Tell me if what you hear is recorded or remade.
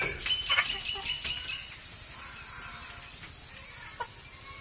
recorded